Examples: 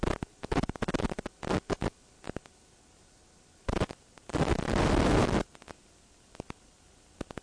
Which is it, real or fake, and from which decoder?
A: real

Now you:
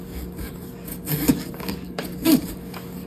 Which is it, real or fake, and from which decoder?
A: fake, codec, DAC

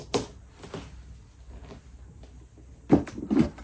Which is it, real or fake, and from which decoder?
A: real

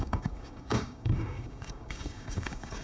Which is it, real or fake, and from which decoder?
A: fake, codec, DAC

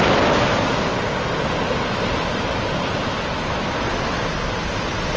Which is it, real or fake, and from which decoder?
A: real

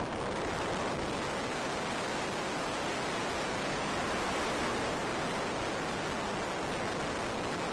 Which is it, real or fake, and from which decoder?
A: real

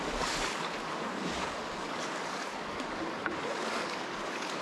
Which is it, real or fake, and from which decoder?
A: fake, codec, DAC